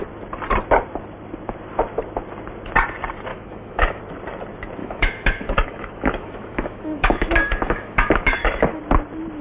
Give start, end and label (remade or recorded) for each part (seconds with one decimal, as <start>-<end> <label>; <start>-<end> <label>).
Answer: 0.0-3.3 recorded; 3.3-4.0 remade; 4.0-4.8 recorded; 4.8-8.8 remade; 8.8-9.4 recorded